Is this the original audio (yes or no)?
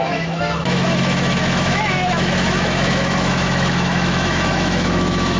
no